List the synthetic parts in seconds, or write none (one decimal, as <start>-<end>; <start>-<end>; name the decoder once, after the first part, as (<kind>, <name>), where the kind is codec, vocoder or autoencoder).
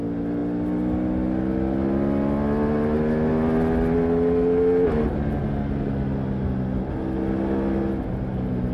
none